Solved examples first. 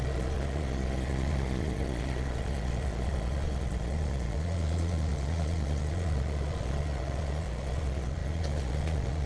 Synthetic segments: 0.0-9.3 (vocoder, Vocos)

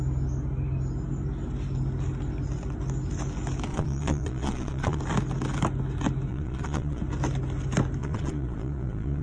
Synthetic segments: 3.7-5.0 (vocoder, Vocos); 6.3-7.0; 8.0-9.2

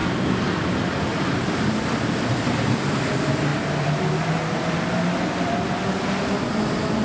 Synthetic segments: 0.0-2.9 (vocoder, BigVGAN v2)

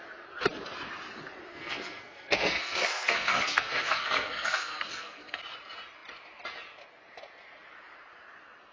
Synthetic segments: 1.5-5.4 (codec, SNAC)

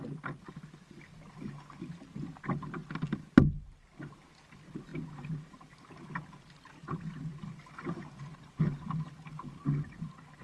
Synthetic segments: none